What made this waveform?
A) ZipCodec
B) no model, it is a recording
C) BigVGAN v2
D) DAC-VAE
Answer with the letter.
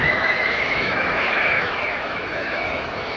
D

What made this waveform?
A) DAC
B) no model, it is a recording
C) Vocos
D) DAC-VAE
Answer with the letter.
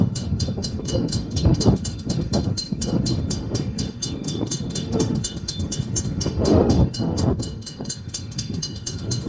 D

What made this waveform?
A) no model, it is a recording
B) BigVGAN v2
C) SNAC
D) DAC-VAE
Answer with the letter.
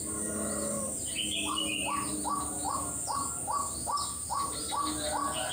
A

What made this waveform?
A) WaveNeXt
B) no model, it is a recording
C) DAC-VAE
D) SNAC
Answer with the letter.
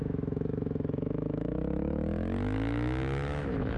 C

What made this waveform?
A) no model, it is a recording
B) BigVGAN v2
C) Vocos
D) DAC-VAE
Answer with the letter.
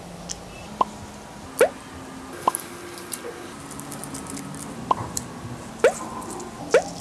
A